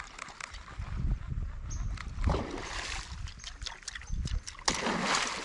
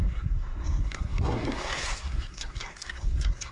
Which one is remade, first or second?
second